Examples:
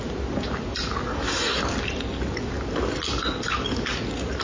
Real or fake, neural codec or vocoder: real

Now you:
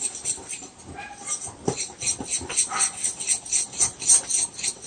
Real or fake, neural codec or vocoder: real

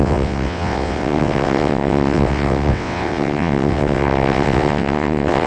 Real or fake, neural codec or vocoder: fake, vocoder, WaveNeXt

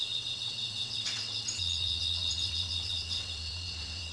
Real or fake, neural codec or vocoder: fake, vocoder, WaveNeXt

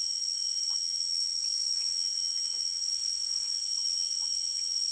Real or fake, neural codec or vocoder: fake, vocoder, WaveNeXt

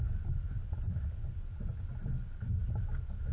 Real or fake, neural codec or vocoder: real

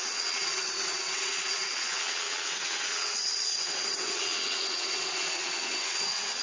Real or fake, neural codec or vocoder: fake, vocoder, WaveNeXt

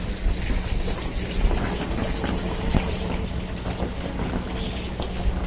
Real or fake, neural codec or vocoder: real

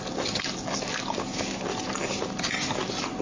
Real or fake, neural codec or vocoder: real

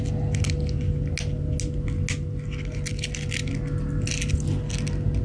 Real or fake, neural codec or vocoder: real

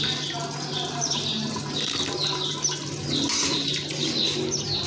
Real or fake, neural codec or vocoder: real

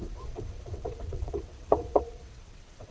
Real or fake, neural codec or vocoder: fake, vocoder, WaveNeXt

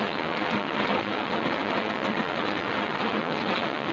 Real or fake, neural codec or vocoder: fake, vocoder, WaveNeXt